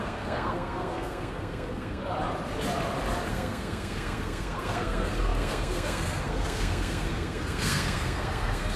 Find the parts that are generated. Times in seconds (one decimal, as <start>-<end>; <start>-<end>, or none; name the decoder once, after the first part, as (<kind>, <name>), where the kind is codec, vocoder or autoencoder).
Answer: 0.0-2.0 (codec, SNAC); 3.3-8.8